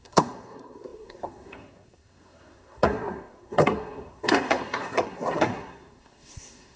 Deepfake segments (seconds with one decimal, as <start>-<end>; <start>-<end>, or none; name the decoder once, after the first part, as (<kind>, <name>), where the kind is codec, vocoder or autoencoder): 0.0-6.8 (codec, SNAC)